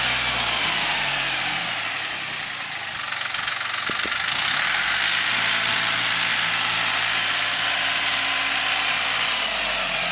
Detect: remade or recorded recorded